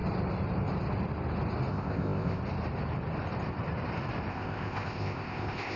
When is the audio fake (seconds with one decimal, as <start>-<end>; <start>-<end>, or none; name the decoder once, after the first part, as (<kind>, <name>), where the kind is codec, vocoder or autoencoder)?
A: 1.7-2.4 (codec, ZipCodec); 4.3-5.8